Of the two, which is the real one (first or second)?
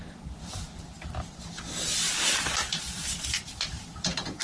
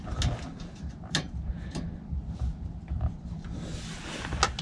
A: second